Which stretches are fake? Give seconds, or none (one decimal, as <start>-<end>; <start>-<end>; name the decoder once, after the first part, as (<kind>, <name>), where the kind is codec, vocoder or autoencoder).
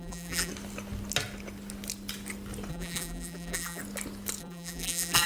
0.0-0.5 (vocoder, BigVGAN v2); 2.7-3.8; 4.4-5.3